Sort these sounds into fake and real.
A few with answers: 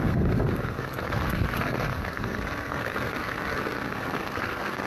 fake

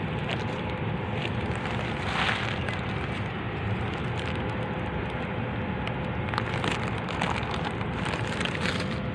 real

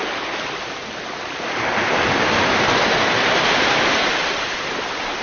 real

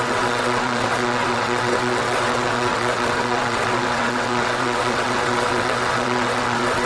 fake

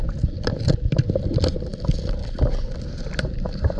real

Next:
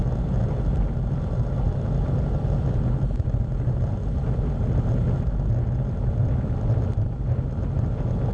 real